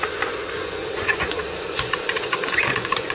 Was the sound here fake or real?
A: fake